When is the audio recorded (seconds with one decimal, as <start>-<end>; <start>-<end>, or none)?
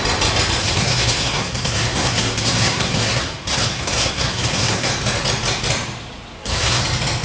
0.0-0.6; 4.9-6.3; 6.8-7.2